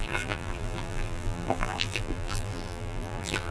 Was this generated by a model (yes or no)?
yes